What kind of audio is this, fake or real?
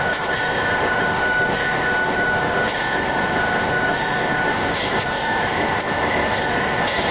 fake